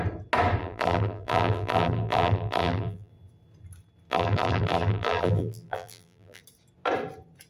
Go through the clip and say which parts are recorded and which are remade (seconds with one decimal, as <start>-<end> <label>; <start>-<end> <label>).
0.0-0.6 recorded; 0.6-3.1 remade; 3.1-4.1 recorded; 4.1-6.4 remade; 6.4-7.5 recorded